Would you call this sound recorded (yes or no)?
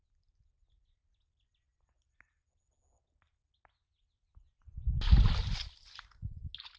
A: yes